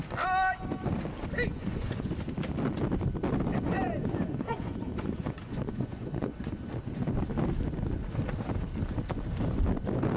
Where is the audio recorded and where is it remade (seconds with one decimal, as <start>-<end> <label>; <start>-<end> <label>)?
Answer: 0.0-1.5 recorded; 1.5-2.1 remade; 2.1-3.5 recorded; 3.5-6.6 remade; 6.6-10.2 recorded